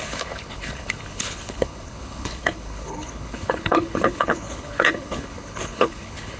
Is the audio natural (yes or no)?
no